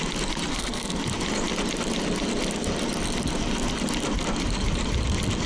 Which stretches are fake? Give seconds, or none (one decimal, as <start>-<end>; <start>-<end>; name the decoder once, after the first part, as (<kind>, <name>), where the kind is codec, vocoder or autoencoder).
0.5-1.0 (codec, SNAC)